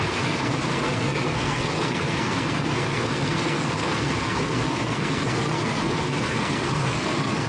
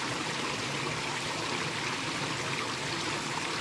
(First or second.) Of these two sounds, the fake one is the first